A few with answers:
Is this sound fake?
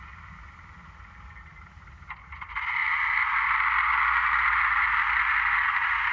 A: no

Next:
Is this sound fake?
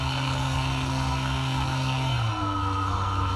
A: yes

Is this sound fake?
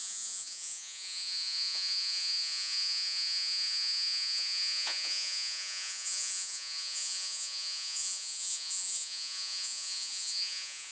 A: yes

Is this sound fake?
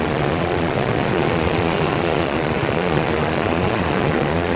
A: yes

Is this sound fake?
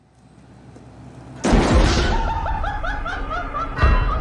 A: no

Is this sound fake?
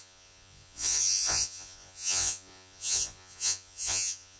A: yes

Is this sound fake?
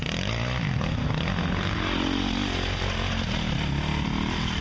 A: no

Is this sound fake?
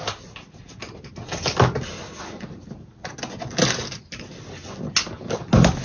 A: no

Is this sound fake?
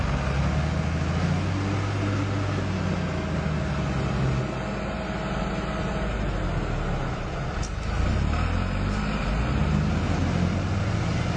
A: no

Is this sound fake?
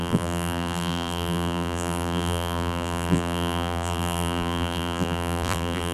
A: yes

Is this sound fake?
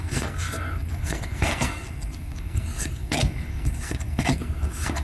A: yes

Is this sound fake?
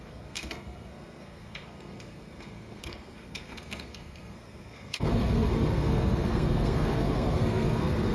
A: yes